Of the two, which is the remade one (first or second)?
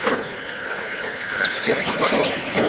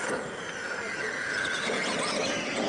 first